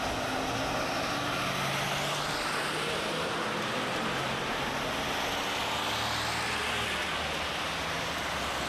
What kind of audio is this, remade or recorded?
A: recorded